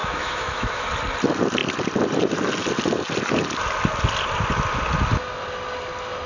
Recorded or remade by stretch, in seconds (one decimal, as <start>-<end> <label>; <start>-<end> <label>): 0.0-0.9 remade; 0.9-6.3 recorded